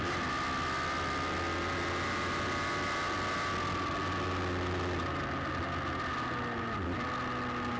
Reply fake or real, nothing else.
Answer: real